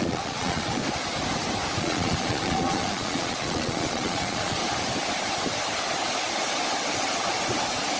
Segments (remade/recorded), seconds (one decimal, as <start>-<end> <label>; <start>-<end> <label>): 0.0-0.8 remade; 0.8-1.8 recorded; 1.8-4.6 remade; 4.6-8.0 recorded